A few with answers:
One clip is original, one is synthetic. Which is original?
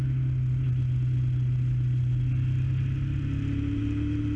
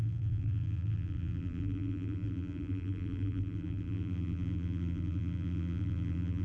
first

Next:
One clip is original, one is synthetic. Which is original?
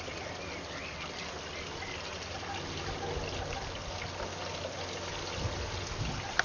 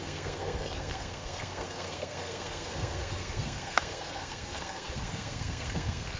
first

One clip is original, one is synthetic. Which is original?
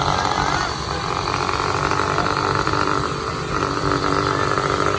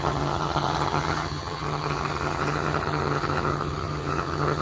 first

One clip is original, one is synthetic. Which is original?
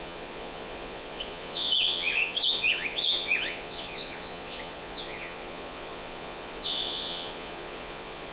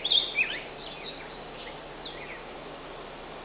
second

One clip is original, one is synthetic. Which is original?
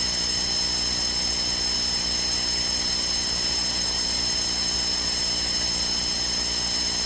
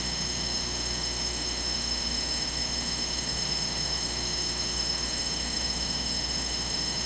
first